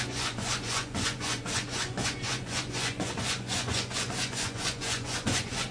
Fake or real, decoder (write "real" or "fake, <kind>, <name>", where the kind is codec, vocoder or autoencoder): fake, vocoder, Vocos